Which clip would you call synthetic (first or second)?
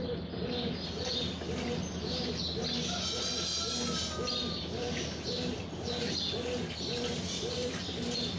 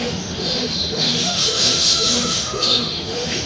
second